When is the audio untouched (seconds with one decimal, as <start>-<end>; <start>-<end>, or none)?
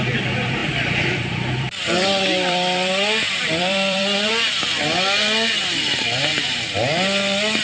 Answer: 0.0-0.6; 4.3-7.6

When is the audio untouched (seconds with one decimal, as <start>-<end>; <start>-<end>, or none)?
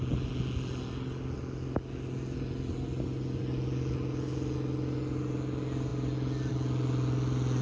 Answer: 0.0-7.6